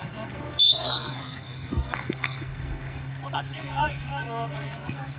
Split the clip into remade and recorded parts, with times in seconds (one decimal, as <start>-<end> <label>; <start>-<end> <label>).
0.0-5.2 remade